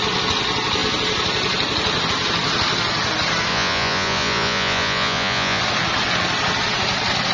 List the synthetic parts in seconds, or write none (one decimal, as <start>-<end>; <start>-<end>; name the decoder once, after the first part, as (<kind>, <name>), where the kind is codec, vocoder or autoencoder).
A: 3.5-5.6 (vocoder, Vocos)